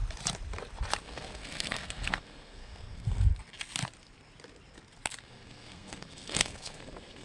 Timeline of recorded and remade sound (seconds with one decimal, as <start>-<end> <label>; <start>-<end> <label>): 0.0-1.0 recorded; 1.0-3.3 remade; 3.3-5.2 recorded; 5.2-7.2 remade